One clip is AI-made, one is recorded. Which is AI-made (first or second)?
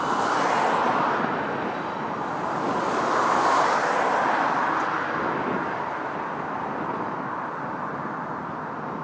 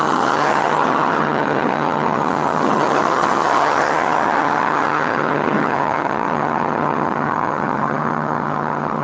second